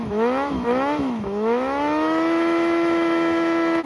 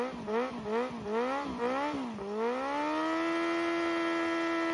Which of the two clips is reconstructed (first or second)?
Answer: first